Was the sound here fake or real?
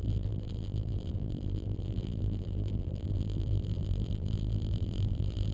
fake